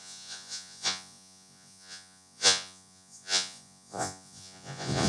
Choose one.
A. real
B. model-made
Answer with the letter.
B